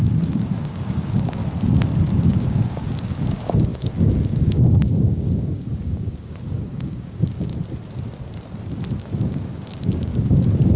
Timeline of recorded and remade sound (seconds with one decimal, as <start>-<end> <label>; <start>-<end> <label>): 0.0-1.4 remade; 1.4-2.0 recorded; 2.0-7.5 remade; 7.5-9.0 recorded; 9.0-10.8 remade